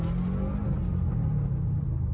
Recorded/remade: recorded